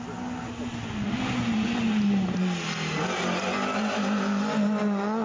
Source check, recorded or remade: recorded